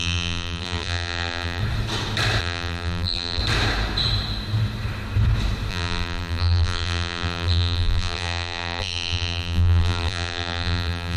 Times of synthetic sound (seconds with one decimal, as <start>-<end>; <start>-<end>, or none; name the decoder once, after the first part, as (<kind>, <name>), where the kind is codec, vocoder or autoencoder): 0.0-1.6 (vocoder, BigVGAN v2); 2.4-3.4; 5.7-11.2